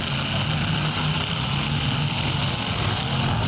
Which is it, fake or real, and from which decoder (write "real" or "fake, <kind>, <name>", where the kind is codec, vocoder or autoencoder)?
real